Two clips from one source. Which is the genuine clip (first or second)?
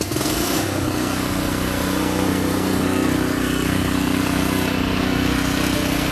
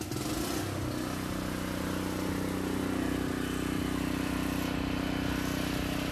second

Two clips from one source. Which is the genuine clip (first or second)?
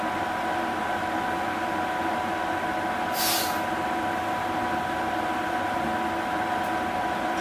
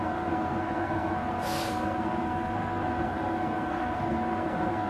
first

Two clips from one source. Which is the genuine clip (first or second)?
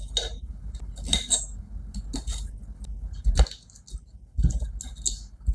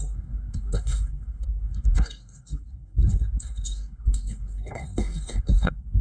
first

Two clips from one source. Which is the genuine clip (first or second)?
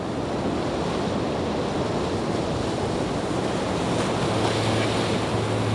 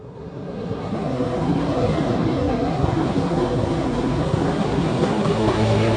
first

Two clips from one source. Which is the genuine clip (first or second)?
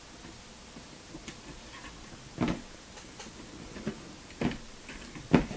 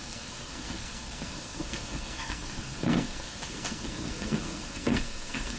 first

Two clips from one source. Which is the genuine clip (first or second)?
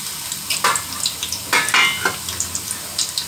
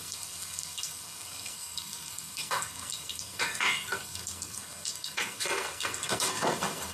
first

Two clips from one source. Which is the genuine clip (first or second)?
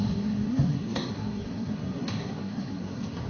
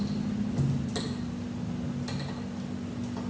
second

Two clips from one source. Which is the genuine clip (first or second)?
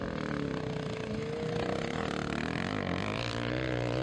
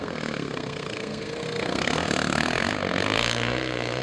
first